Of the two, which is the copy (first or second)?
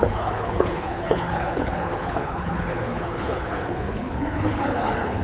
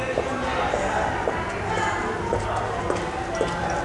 first